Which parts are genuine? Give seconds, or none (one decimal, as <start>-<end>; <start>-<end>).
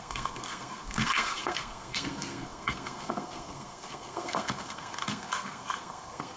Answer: none